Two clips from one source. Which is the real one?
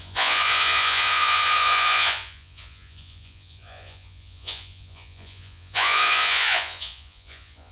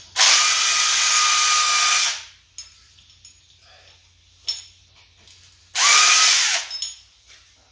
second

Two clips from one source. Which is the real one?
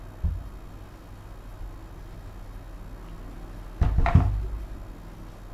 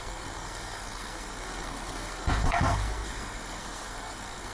first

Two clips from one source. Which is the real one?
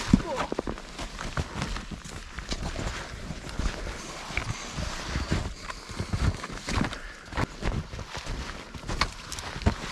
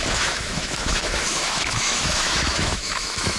first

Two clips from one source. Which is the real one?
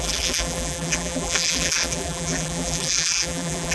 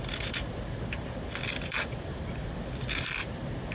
second